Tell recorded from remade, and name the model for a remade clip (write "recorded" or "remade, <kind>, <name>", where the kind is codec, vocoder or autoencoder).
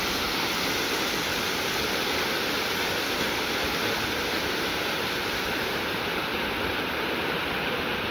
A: recorded